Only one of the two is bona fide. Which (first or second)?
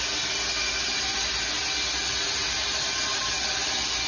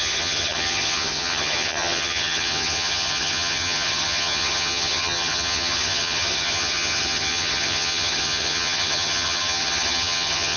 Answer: first